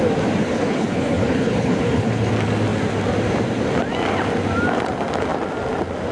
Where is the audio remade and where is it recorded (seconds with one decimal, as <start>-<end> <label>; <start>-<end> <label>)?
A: 0.0-0.4 recorded; 0.4-2.3 remade; 2.3-6.1 recorded